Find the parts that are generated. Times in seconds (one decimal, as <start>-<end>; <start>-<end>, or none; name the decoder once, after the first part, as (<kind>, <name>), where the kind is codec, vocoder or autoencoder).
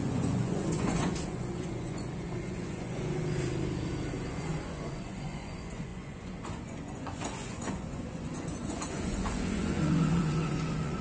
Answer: 0.0-3.2 (vocoder, Vocos); 4.1-11.0